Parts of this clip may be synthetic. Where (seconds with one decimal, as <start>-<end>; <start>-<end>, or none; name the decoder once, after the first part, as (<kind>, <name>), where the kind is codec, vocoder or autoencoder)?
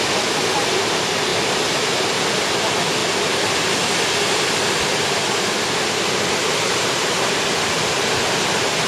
none